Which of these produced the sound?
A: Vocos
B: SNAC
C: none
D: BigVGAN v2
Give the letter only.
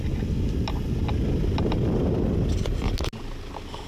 C